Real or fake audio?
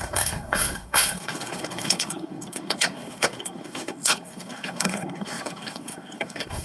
fake